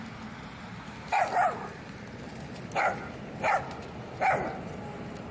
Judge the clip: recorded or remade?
recorded